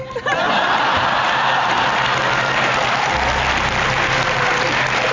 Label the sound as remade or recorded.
recorded